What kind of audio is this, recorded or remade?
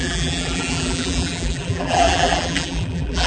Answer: remade